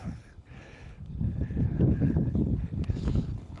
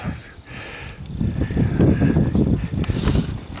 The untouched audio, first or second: second